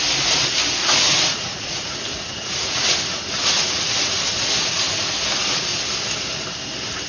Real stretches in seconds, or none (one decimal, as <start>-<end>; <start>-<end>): 0.0-0.8; 5.1-7.1